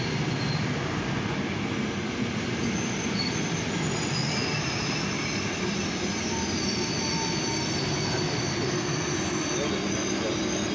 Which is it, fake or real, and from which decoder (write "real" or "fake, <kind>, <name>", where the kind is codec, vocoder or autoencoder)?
real